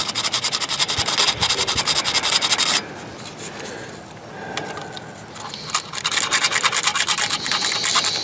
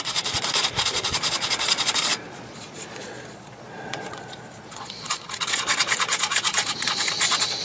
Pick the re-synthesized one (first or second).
second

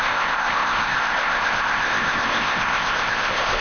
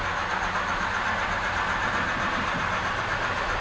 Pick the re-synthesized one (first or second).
first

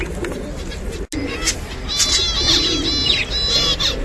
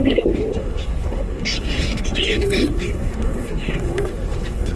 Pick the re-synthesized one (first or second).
second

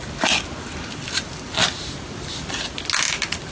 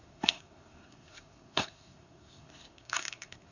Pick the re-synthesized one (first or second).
second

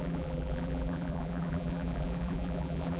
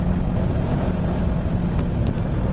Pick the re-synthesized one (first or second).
first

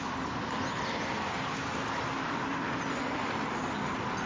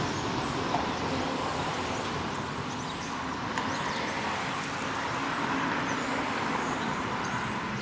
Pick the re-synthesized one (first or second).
second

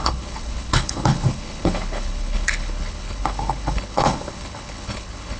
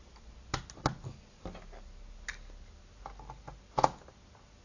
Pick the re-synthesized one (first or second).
first